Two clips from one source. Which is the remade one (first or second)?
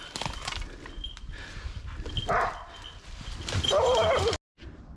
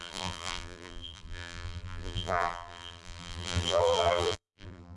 second